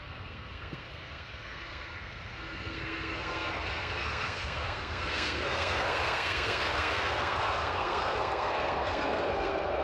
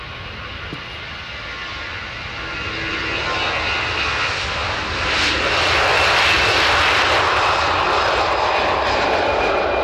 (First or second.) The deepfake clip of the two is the first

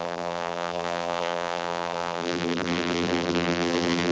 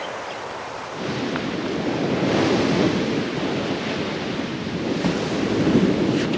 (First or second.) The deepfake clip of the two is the first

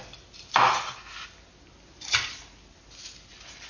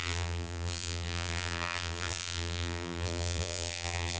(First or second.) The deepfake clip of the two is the second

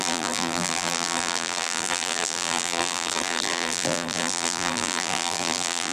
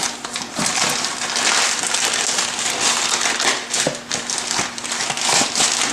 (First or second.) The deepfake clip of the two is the first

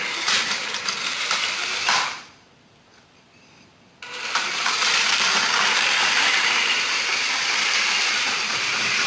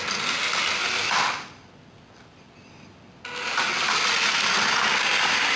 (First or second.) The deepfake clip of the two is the first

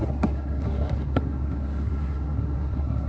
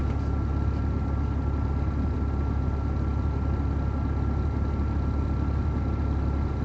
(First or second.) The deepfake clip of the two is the first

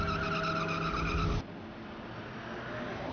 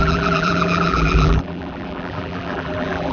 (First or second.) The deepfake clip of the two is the second